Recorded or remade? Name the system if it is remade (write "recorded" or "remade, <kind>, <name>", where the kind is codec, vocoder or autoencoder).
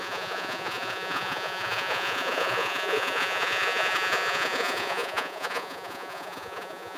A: remade, vocoder, Vocos